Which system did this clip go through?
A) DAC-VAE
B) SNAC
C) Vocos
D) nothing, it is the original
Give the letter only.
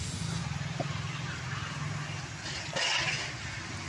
D